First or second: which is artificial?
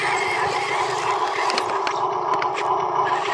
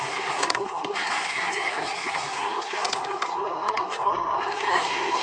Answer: second